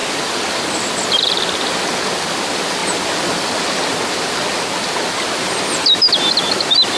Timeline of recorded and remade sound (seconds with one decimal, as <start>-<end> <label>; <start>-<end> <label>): 0.0-7.0 recorded